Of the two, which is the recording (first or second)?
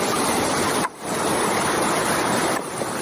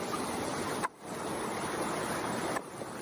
second